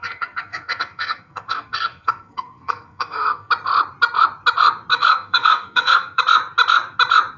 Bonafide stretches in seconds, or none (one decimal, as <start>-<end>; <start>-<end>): 3.5-4.9; 6.2-7.4